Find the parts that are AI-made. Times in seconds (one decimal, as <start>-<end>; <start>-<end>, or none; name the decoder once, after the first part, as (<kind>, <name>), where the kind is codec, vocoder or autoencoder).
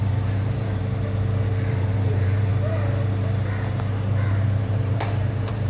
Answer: 0.0-0.8 (vocoder, BigVGAN v2); 1.7-2.5; 4.6-5.7